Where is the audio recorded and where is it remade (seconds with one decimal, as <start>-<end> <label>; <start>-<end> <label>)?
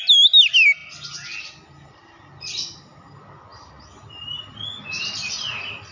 0.0-5.9 recorded